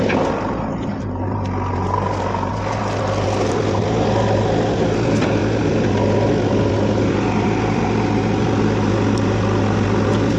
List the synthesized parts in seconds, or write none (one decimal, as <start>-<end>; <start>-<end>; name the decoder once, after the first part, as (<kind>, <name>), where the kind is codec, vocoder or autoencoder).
5.4-7.8 (vocoder, BigVGAN v2)